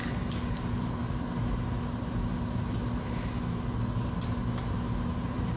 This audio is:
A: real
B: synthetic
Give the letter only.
A